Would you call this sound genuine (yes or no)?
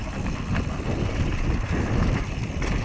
yes